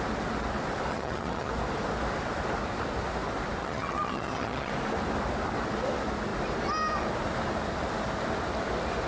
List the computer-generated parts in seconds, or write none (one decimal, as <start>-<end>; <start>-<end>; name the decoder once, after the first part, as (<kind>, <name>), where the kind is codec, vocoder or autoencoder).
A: 0.9-1.5 (vocoder, HiFi-GAN); 3.6-4.7